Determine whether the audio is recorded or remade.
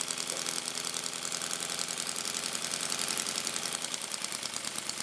recorded